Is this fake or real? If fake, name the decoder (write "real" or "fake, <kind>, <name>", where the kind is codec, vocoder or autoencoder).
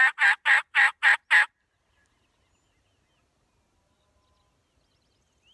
real